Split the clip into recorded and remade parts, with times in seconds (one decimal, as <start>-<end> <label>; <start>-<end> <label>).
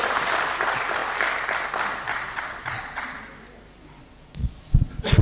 0.0-2.1 recorded; 2.1-3.2 remade; 3.2-4.0 recorded; 4.0-5.2 remade